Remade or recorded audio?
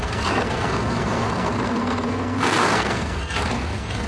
remade